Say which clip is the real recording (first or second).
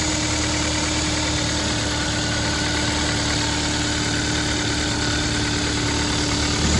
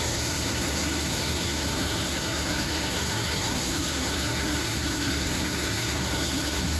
first